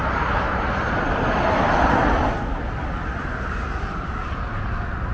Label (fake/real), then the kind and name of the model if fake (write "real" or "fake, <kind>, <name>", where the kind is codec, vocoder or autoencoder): real